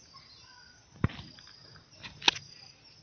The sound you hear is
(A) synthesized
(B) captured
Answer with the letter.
B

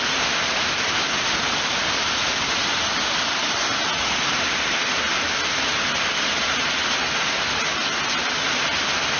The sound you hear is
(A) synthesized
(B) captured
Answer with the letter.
B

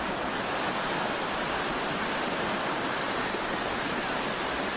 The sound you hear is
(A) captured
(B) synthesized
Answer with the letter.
A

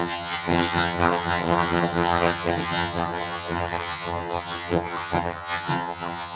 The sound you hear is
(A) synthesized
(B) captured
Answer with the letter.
A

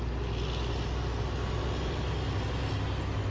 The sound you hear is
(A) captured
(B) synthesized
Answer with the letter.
A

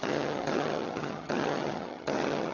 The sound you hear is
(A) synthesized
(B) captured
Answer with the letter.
A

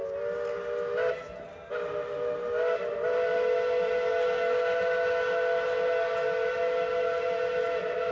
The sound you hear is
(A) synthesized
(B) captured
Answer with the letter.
B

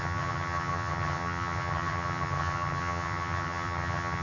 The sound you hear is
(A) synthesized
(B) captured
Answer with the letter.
A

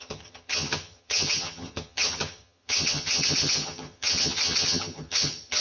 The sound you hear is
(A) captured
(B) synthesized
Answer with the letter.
B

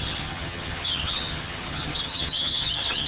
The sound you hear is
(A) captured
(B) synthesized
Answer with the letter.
B